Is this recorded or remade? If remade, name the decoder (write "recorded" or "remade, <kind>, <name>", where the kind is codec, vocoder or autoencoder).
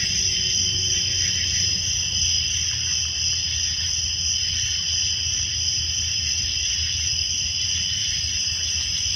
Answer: recorded